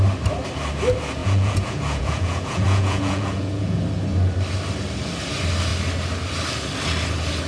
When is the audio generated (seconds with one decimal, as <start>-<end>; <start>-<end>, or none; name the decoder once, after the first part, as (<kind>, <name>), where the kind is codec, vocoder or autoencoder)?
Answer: 1.2-3.8 (vocoder, Vocos)